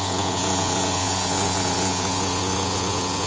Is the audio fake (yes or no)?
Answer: yes